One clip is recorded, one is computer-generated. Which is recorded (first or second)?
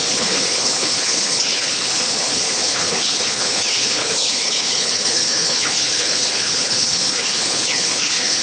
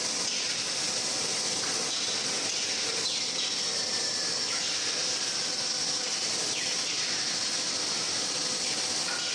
second